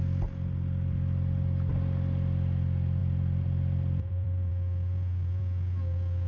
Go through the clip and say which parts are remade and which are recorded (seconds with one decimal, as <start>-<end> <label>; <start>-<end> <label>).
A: 0.0-3.0 recorded; 3.0-4.5 remade; 4.5-6.3 recorded